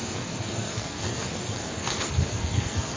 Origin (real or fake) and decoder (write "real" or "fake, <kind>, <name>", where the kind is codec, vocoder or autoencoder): fake, codec, SNAC